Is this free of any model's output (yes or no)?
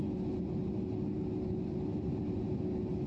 yes